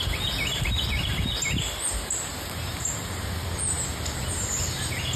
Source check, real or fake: real